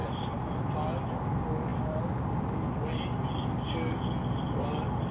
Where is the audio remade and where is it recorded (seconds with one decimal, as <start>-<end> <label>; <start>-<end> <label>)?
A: 0.0-5.1 recorded